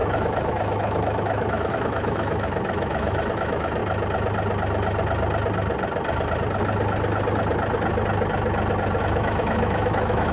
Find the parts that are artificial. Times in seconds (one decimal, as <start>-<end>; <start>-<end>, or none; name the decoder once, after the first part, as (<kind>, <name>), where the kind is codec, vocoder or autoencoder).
0.0-3.8 (autoencoder, DAC-VAE); 9.0-10.3